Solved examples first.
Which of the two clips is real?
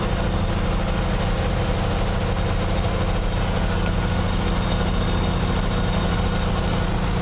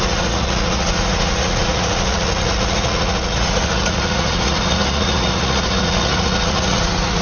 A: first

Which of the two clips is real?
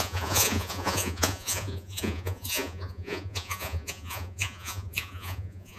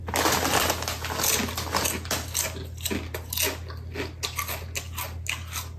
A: second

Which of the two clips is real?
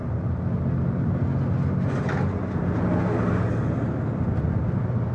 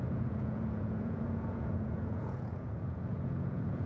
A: first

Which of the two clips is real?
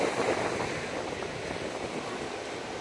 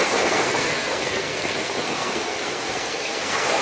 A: first